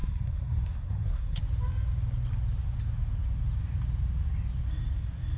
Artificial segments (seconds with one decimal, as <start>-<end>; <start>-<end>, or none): 0.0-1.4